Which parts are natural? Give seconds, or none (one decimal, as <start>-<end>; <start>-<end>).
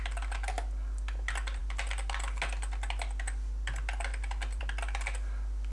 0.0-5.7